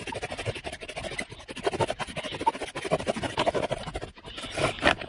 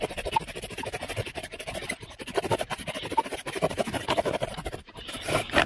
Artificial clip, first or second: second